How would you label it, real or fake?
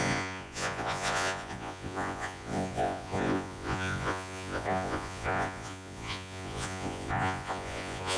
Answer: fake